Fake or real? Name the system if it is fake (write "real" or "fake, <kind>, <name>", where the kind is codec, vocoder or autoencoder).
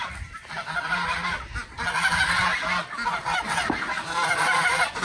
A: real